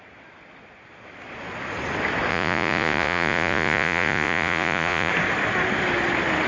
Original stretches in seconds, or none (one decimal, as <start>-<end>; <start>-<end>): 0.0-2.3; 5.1-6.5